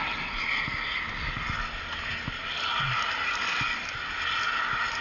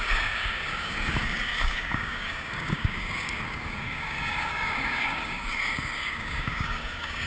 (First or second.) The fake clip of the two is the second